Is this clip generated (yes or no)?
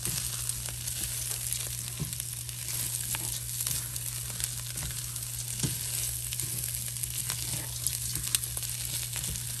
no